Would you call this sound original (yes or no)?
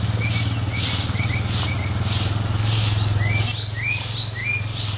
yes